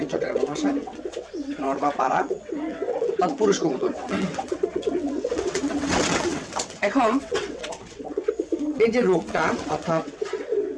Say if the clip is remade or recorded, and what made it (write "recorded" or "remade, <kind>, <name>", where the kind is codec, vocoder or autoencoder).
remade, vocoder, WaveNeXt